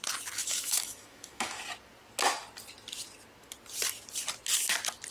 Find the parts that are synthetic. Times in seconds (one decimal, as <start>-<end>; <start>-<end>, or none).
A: 0.4-1.6